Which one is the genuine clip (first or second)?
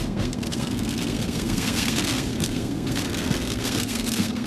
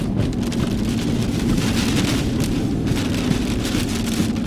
second